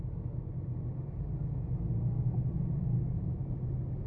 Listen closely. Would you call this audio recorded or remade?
recorded